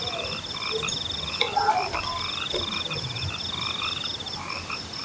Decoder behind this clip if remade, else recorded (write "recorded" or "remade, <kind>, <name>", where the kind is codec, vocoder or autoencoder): recorded